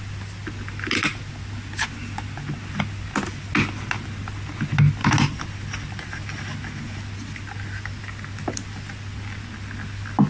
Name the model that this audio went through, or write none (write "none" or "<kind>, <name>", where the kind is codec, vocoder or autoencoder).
none